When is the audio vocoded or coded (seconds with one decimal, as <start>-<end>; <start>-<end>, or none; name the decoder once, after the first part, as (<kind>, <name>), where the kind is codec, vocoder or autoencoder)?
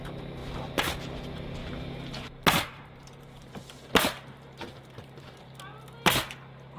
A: 1.6-5.3 (vocoder, BigVGAN v2)